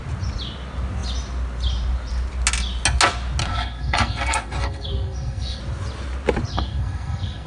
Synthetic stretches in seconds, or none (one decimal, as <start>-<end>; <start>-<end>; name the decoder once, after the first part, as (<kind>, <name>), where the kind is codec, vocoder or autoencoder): 3.4-5.6 (codec, SNAC); 6.5-7.5